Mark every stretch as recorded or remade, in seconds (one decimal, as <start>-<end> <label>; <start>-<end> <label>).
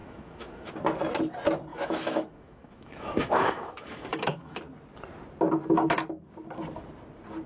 0.0-0.7 remade; 0.7-1.7 recorded; 1.7-4.6 remade; 4.6-7.5 recorded